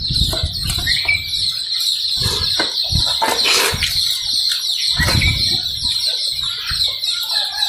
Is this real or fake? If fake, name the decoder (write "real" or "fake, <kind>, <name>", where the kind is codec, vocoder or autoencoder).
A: real